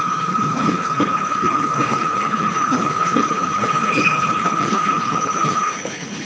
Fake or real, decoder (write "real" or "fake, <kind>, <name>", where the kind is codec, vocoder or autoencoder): fake, codec, HILCodec